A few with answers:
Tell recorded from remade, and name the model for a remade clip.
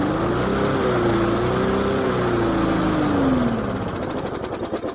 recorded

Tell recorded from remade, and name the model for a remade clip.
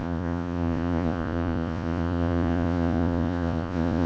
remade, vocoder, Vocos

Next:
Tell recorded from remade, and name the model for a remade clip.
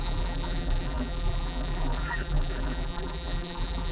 remade, vocoder, BigVGAN v2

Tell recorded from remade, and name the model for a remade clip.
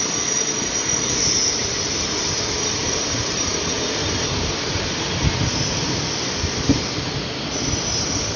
recorded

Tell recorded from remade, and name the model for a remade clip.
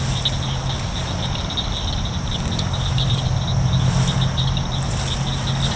recorded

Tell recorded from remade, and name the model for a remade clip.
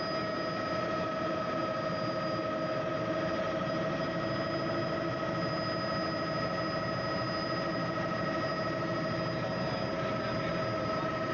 recorded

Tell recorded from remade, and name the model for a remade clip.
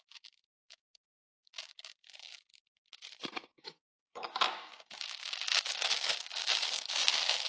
remade, codec, DAC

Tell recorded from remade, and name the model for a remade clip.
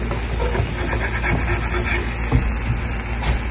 recorded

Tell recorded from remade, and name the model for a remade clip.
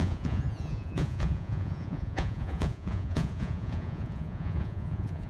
remade, vocoder, Vocos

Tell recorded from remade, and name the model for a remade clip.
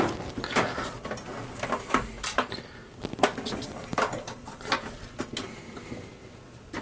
recorded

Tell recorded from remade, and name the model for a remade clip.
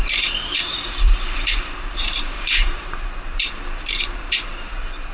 remade, vocoder, BigVGAN v2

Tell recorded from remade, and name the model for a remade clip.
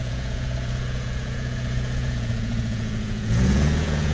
remade, vocoder, Vocos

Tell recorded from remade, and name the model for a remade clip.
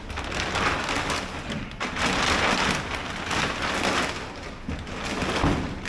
recorded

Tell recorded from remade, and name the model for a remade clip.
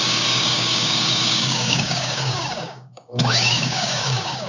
remade, codec, DAC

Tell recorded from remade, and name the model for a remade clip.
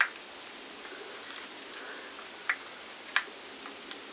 recorded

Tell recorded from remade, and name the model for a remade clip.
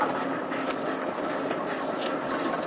recorded